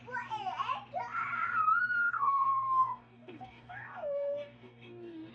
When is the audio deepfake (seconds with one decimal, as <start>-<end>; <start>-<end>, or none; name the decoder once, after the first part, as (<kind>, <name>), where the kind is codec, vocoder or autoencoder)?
2.0-5.3 (codec, DAC)